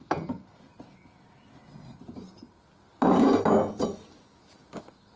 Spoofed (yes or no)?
no